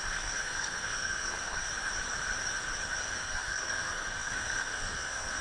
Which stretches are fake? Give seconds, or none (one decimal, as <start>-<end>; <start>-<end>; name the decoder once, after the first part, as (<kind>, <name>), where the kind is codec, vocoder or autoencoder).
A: 0.0-1.7 (codec, SNAC); 3.0-5.4